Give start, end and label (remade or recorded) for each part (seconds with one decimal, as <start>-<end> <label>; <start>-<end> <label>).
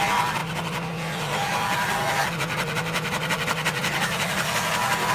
0.0-5.1 recorded